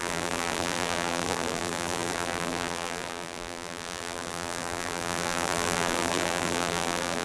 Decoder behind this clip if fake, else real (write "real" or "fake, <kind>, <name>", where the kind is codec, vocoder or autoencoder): fake, vocoder, BigVGAN v2